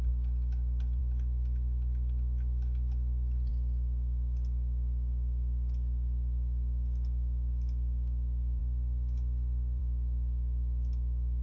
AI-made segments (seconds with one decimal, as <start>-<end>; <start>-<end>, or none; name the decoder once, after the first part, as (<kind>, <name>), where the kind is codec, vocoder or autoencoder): none